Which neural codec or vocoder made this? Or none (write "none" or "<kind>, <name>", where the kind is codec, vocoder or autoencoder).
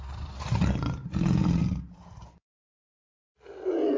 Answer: none